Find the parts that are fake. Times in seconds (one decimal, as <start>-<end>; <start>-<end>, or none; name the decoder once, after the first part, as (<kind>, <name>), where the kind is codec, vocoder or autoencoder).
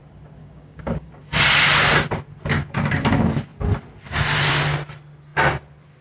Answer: 0.4-1.1 (codec, DAC)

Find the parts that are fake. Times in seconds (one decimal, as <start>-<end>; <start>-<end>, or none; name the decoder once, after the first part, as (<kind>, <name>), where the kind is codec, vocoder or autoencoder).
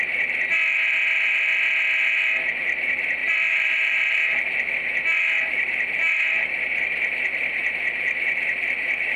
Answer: 3.2-4.7 (vocoder, BigVGAN v2); 5.5-6.5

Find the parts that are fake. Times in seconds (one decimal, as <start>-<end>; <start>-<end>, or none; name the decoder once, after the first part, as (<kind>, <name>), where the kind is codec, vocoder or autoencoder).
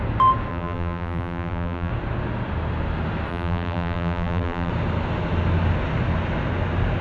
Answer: 0.5-1.9 (vocoder, BigVGAN v2); 3.3-4.7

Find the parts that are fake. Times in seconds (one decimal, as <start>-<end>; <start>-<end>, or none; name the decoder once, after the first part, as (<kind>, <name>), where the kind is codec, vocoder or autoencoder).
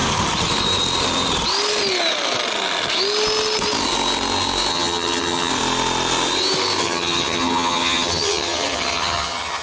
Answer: 4.7-5.5 (vocoder, HiFi-GAN); 6.8-9.6